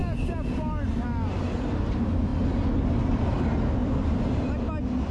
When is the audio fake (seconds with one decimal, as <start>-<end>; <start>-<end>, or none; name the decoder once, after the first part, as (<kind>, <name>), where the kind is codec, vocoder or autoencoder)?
none